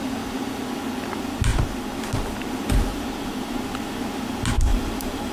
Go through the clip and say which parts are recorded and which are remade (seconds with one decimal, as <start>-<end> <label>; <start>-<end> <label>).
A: 0.0-2.9 recorded; 2.9-4.0 remade; 4.0-4.7 recorded; 4.7-5.3 remade